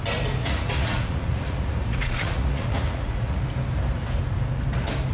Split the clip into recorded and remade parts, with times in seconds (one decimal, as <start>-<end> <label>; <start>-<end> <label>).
0.0-0.4 recorded; 0.4-3.4 remade; 3.4-5.1 recorded